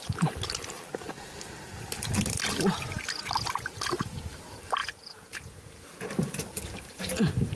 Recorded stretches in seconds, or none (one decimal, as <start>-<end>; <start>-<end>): 0.0-4.8; 6.1-7.6